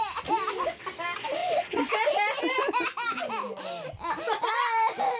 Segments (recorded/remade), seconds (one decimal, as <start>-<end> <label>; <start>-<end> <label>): 0.0-5.2 recorded